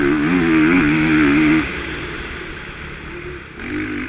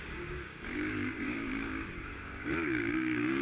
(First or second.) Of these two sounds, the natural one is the first